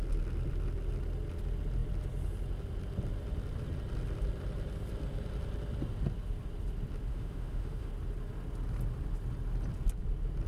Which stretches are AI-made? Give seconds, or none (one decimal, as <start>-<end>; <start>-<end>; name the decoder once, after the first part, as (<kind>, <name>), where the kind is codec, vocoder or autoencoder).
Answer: 7.1-7.9 (autoencoder, DAC-VAE)